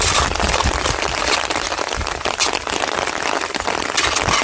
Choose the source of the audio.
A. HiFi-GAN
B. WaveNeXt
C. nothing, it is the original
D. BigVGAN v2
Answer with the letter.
C